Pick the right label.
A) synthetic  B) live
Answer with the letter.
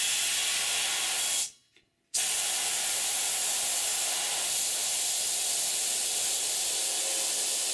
B